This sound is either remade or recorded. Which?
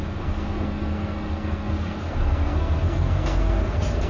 remade